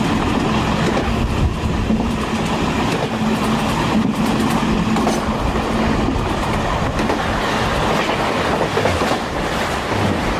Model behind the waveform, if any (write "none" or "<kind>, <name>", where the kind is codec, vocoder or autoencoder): none